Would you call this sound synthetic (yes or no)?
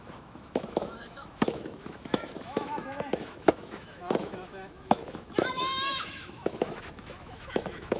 yes